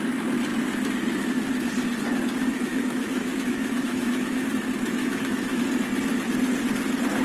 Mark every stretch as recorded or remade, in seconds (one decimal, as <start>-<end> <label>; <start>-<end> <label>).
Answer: 0.0-2.7 recorded; 2.7-4.5 remade; 4.5-5.0 recorded; 5.0-5.6 remade; 5.6-7.2 recorded